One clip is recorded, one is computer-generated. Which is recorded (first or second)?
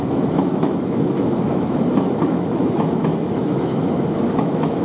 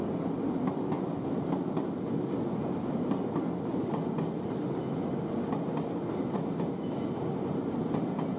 second